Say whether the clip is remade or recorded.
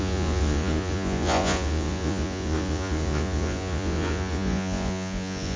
remade